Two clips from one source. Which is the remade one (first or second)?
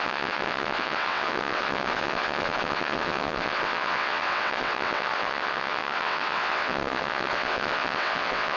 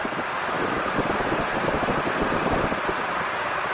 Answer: first